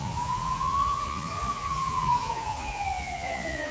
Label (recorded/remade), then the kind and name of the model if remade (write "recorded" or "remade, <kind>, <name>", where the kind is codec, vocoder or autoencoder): remade, vocoder, Vocos